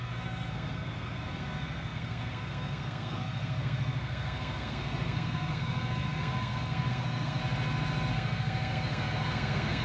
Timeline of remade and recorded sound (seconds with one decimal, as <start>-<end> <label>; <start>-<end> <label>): 0.0-7.4 remade; 7.4-8.1 recorded; 8.1-9.8 remade